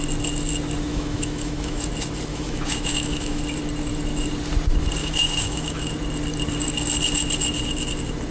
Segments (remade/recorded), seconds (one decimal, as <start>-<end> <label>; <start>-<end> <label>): 0.0-0.9 recorded; 0.9-1.8 remade; 1.8-2.3 recorded; 2.3-3.4 remade; 3.4-5.0 recorded; 5.0-5.9 remade; 5.9-8.3 recorded